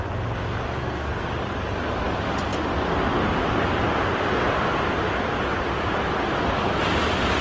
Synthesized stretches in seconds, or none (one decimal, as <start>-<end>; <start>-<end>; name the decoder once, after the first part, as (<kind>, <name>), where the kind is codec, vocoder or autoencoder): 0.8-1.3 (codec, SNAC)